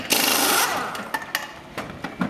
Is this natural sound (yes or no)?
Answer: yes